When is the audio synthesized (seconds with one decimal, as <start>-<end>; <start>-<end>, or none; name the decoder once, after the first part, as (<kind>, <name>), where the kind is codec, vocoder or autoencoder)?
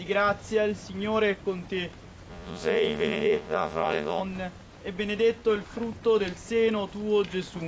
2.3-4.2 (vocoder, Vocos)